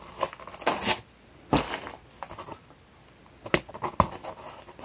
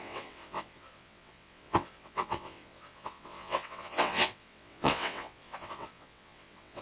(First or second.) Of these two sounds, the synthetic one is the second